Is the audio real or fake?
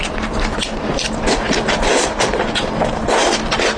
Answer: real